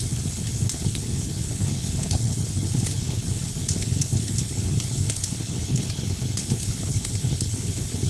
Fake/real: fake